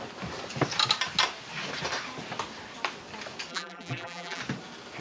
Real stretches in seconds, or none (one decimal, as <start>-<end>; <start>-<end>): 0.0-3.5; 4.4-5.0

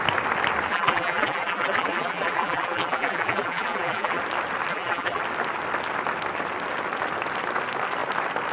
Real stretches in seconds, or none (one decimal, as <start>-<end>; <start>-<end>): 0.0-0.7; 4.2-4.7; 5.2-8.5

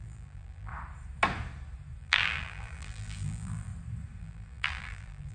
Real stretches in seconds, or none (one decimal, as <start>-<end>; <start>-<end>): 0.7-2.0; 3.7-4.2

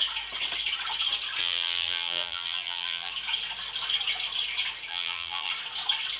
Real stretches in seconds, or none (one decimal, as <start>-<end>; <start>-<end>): 0.0-1.4; 3.1-4.9; 5.5-6.2

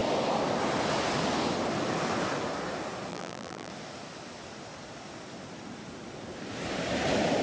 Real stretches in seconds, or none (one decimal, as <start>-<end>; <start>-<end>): 0.0-3.1; 3.7-7.4